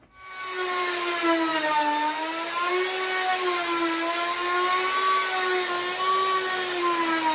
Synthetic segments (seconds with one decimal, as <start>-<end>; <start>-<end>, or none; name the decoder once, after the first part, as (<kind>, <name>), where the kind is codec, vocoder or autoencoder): none